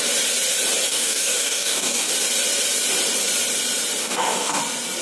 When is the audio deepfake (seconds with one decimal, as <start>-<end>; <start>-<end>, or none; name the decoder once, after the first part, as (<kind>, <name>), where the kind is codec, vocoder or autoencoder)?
0.9-2.1 (codec, DAC); 4.0-4.6